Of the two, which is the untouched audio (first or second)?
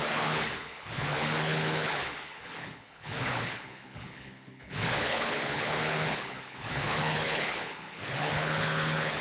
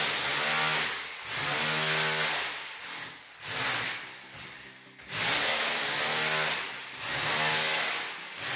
second